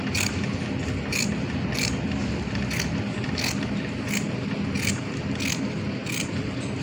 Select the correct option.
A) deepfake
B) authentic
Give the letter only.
B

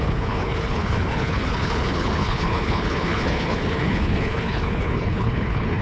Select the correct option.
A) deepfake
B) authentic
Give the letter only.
A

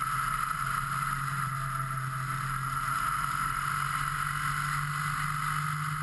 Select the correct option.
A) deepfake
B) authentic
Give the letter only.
B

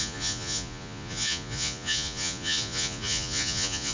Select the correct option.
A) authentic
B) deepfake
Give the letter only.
B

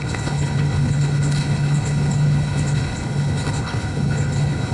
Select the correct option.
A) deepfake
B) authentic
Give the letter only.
A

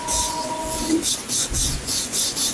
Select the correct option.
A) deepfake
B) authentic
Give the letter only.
A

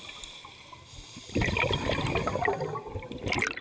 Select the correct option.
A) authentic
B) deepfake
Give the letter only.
A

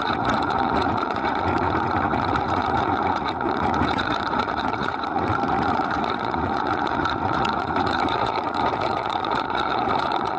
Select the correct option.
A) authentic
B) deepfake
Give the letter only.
B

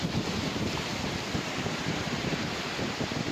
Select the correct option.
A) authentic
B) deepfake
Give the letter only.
A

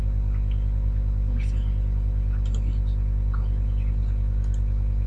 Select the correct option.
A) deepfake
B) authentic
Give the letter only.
B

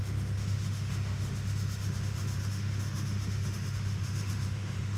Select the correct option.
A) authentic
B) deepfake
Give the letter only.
B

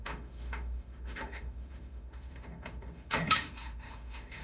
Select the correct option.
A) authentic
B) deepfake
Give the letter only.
B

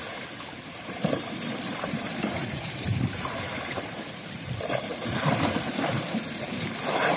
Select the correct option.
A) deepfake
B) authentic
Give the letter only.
A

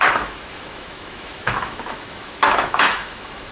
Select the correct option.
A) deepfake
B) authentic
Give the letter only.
A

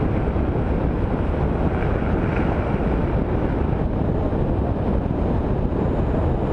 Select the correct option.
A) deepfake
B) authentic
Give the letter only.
B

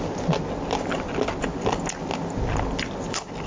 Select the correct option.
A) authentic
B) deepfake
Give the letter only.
A